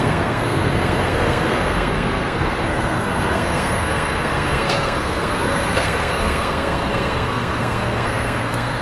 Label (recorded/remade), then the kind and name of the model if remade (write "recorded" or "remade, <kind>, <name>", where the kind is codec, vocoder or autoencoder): remade, codec, SNAC